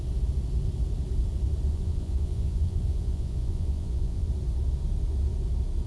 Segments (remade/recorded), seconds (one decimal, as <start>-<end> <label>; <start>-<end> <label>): 0.0-1.7 recorded; 1.7-4.3 remade; 4.3-5.9 recorded